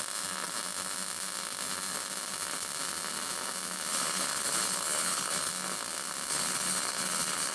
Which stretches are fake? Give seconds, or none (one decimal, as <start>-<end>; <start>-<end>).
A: 3.9-5.5; 6.3-7.5